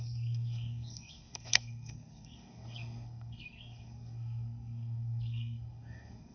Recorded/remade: remade